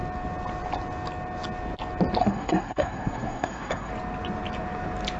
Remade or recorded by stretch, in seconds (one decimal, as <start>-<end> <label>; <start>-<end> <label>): 0.0-2.2 recorded; 2.2-3.9 remade; 3.9-5.2 recorded